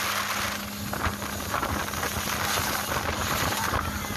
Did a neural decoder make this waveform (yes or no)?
no